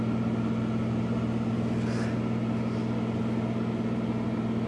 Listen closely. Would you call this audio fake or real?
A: real